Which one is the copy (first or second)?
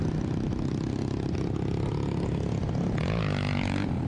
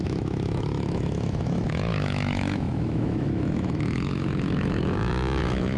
second